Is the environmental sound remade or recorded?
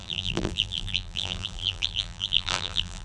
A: remade